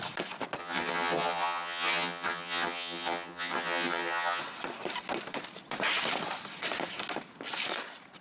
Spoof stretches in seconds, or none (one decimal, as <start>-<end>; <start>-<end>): 0.6-4.4